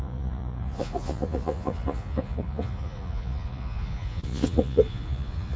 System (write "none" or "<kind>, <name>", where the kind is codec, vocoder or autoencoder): vocoder, Vocos